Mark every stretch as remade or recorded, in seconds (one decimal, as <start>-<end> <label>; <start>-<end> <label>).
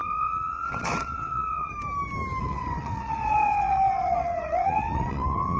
0.0-1.7 remade; 1.7-2.4 recorded; 2.4-5.6 remade